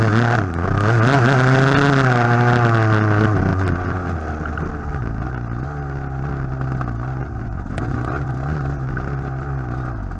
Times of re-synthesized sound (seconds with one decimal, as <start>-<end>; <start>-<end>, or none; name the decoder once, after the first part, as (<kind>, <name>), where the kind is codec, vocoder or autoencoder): 7.2-8.3 (vocoder, Vocos)